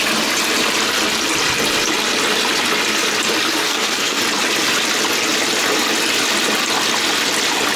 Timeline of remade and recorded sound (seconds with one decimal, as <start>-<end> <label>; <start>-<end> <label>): 0.0-3.6 recorded; 3.6-4.2 remade; 4.2-7.8 recorded